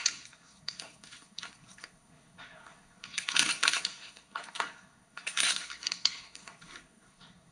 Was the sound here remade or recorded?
remade